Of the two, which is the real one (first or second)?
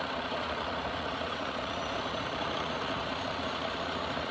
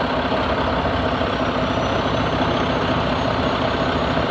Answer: second